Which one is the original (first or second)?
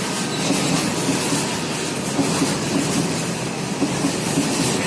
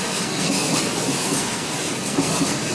first